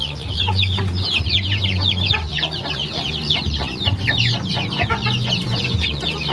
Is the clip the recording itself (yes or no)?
no